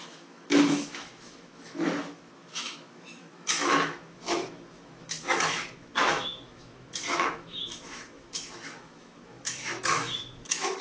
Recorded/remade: remade